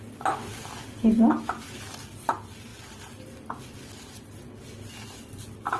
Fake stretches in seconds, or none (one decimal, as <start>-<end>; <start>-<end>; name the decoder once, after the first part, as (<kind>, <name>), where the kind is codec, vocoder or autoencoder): none